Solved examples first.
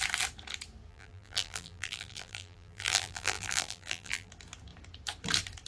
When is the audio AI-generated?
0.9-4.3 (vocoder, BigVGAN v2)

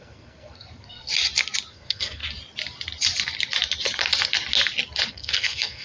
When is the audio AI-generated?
0.0-1.1 (codec, SNAC); 1.7-2.2; 5.1-5.8

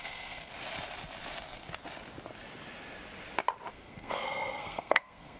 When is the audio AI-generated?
0.0-0.5 (codec, SNAC); 3.7-5.4

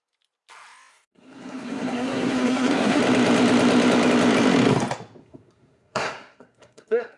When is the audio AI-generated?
0.9-3.0 (codec, SNAC); 5.2-7.2